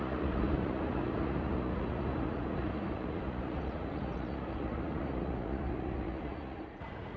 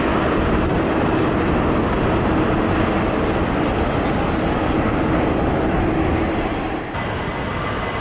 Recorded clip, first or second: second